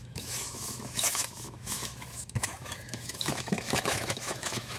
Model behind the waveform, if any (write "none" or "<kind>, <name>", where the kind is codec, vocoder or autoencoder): autoencoder, DAC-VAE